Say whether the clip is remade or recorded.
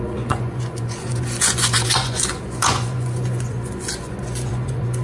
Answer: remade